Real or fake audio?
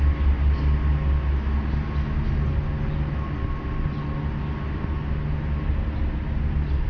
real